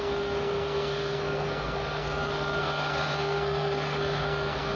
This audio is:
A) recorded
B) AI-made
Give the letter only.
B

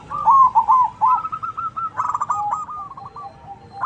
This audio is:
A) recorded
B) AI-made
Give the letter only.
A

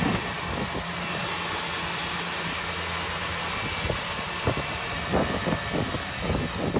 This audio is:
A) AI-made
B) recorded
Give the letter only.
B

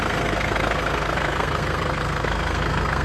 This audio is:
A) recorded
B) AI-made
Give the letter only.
B